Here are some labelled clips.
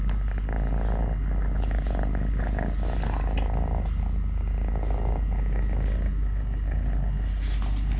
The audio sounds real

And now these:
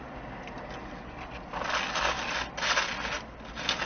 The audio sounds real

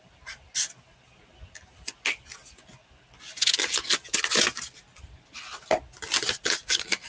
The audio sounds real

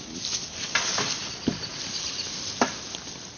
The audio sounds real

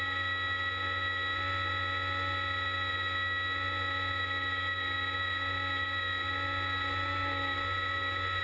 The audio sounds real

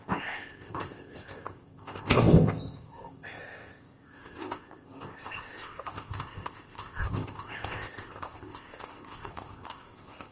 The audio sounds fake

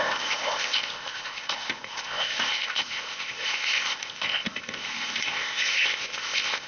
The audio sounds fake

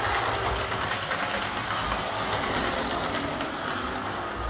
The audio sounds real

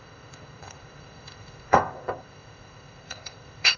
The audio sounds fake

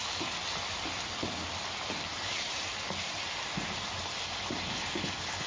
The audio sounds real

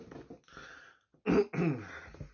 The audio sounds real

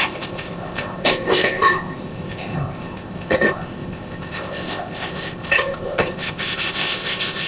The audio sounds fake